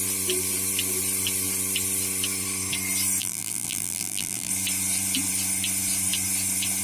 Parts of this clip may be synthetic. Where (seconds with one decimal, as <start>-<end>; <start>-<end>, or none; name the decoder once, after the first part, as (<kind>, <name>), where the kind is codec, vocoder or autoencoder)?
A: 3.2-4.5 (vocoder, BigVGAN v2)